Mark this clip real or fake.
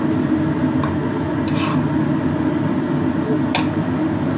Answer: real